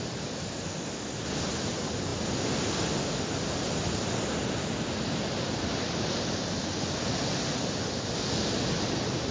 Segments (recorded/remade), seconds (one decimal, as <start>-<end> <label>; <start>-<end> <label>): 0.0-9.3 recorded